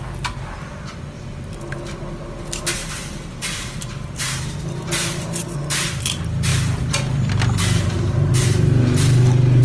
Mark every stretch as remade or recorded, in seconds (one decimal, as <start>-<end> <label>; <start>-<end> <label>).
0.0-2.8 recorded; 2.8-4.6 remade; 4.6-6.5 recorded; 6.5-8.3 remade; 8.3-9.6 recorded